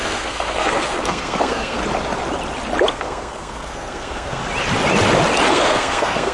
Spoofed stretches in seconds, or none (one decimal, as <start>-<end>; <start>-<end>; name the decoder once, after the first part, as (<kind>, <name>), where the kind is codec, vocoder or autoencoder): 0.0-1.8 (codec, SNAC); 2.9-4.4; 5.5-6.3